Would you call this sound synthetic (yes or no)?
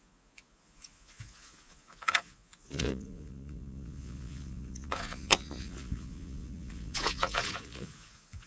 yes